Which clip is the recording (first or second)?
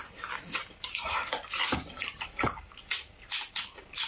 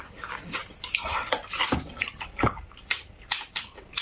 first